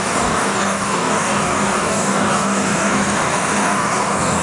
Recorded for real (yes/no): no